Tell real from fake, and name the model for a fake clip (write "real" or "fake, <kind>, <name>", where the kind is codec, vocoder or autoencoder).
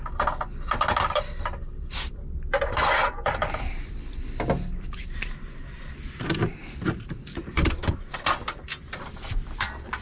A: fake, vocoder, BigVGAN v2